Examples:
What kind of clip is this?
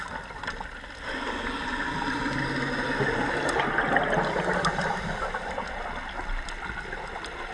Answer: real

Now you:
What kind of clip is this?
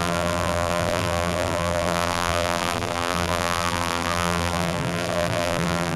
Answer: fake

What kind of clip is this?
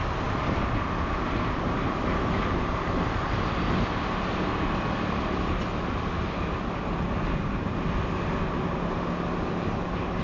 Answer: real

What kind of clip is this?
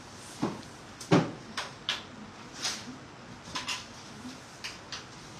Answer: real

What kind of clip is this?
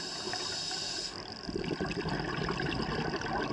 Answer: real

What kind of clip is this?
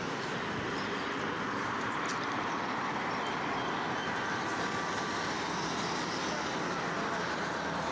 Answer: real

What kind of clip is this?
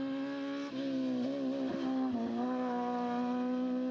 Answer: real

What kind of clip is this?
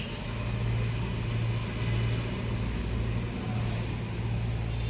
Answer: real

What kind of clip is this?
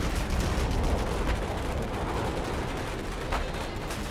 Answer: real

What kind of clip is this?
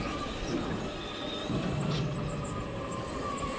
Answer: real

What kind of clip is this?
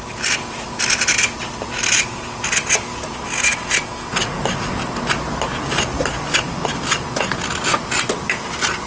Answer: real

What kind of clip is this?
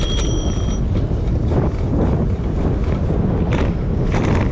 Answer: real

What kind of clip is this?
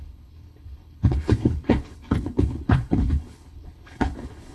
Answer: fake